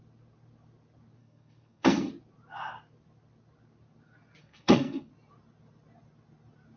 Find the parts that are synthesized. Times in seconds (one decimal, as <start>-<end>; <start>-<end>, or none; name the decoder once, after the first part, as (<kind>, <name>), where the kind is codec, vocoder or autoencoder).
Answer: 1.2-2.1 (codec, SNAC); 4.4-5.1